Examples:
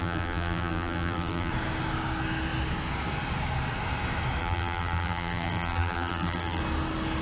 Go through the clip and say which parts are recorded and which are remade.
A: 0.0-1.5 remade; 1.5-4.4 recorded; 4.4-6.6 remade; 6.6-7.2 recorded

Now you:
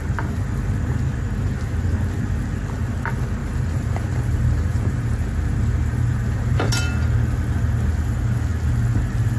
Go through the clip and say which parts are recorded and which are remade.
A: 0.0-3.4 recorded; 3.4-6.7 remade; 6.7-9.4 recorded

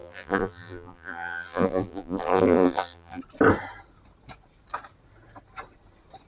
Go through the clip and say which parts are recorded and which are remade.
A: 0.0-3.2 remade; 3.2-6.3 recorded

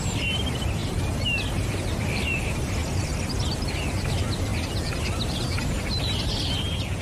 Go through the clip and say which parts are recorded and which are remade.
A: 0.0-0.8 remade; 0.8-2.0 recorded; 2.0-7.0 remade

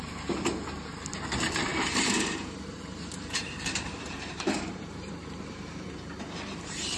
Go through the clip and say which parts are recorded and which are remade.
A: 0.0-1.7 recorded; 1.7-5.9 remade; 5.9-7.0 recorded

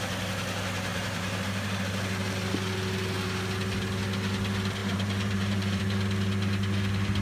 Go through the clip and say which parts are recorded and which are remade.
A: 0.0-0.9 recorded; 0.9-1.9 remade; 1.9-4.8 recorded; 4.8-5.8 remade; 5.8-7.2 recorded

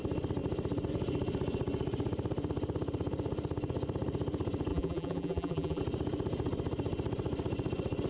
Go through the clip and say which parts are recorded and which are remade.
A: 0.0-4.7 recorded; 4.7-5.8 remade; 5.8-8.1 recorded